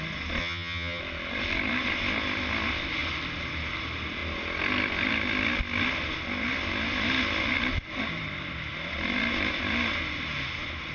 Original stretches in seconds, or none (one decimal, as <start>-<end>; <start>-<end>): 0.0-0.4; 1.0-10.9